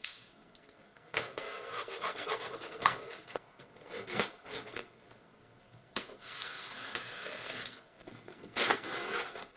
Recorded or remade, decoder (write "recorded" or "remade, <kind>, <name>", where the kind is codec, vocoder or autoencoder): remade, codec, SNAC